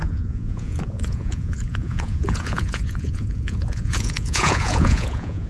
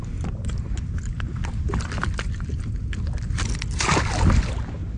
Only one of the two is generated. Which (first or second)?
first